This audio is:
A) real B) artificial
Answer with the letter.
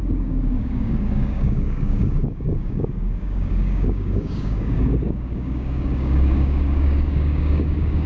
B